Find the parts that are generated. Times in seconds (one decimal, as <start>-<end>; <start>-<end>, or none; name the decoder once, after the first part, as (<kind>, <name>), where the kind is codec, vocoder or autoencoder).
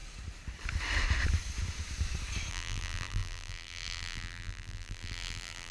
2.5-5.7 (vocoder, BigVGAN v2)